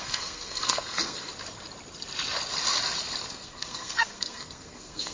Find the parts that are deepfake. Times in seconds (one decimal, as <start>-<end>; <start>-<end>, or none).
0.0-1.3; 3.3-5.1